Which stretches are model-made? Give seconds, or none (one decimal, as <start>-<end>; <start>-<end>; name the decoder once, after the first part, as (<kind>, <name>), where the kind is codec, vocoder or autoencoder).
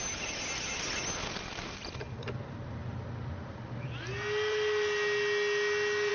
none